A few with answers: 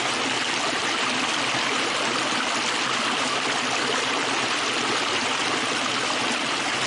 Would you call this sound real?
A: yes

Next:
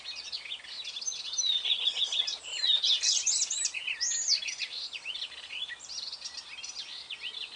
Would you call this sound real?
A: yes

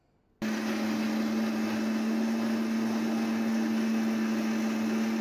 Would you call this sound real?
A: yes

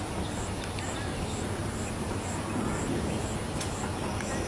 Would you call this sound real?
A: yes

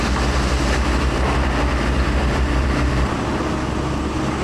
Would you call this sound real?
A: yes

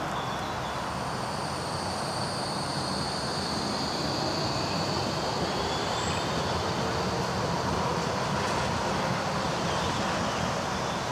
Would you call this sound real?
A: yes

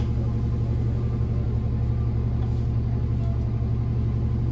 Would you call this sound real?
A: yes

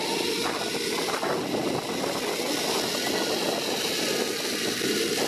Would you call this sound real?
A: yes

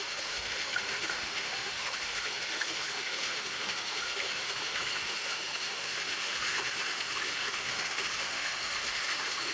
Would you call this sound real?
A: no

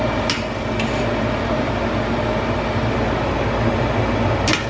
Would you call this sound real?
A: yes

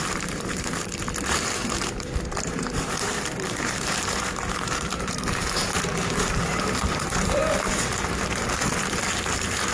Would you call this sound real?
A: no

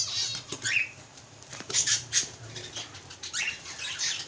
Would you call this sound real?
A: no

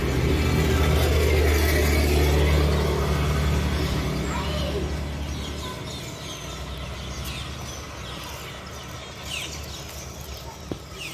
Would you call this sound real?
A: yes